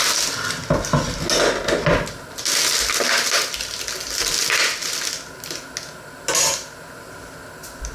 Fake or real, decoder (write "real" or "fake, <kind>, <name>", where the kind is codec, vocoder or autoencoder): real